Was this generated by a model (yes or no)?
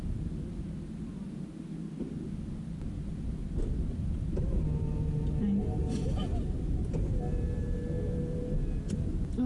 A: no